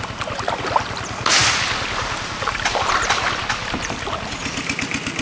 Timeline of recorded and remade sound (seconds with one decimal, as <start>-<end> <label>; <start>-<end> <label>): 0.0-5.2 recorded